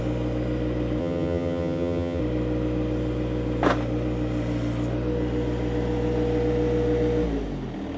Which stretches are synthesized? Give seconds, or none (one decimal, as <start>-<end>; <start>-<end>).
1.0-2.2